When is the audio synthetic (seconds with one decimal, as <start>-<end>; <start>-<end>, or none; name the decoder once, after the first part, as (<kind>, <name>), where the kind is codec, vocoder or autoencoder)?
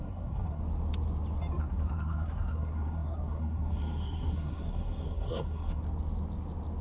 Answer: 0.0-0.6 (codec, SNAC); 1.6-5.8